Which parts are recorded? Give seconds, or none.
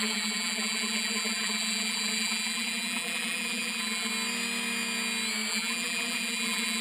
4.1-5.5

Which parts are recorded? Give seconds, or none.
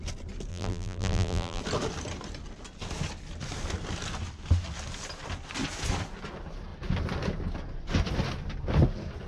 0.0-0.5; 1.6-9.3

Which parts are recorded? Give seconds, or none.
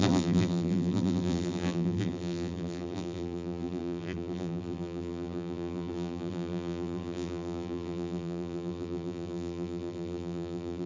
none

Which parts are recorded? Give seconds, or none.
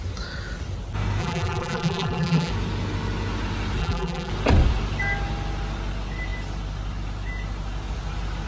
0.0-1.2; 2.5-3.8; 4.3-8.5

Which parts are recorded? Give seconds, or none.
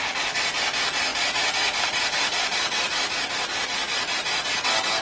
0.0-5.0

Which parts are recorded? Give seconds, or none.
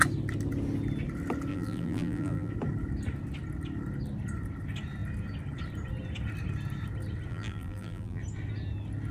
0.0-1.5; 2.5-7.3; 8.2-9.1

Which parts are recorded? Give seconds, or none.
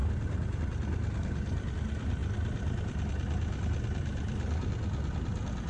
0.6-5.7